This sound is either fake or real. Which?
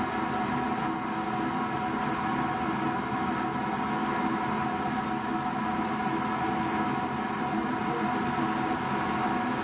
real